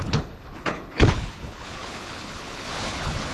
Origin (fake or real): fake